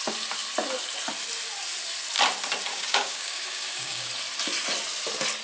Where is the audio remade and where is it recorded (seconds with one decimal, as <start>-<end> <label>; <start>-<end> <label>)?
0.0-2.7 recorded; 2.7-4.1 remade; 4.1-5.4 recorded

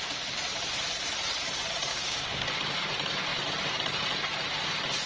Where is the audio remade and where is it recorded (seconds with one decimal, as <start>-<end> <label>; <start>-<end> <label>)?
0.0-1.9 recorded; 1.9-2.5 remade; 2.5-5.1 recorded

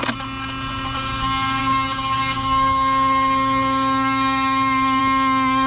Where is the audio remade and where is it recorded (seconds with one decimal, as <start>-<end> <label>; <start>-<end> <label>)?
0.0-1.6 recorded; 1.6-5.0 remade; 5.0-5.7 recorded